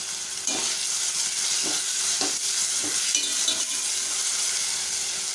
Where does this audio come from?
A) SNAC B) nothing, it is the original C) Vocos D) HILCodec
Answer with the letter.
B